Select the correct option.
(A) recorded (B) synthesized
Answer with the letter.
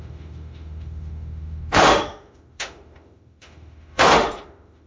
B